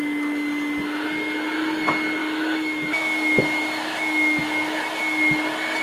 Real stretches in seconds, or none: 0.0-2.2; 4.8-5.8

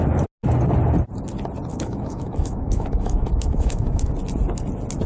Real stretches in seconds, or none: 0.0-1.7; 4.1-5.1

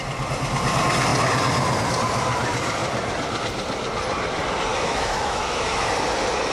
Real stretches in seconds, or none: 0.0-4.7; 5.9-6.5

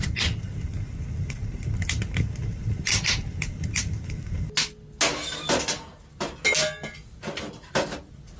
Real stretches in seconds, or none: 0.0-8.4

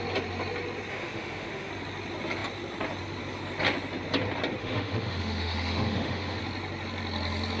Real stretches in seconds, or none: 0.0-0.9; 1.7-4.6; 6.4-7.6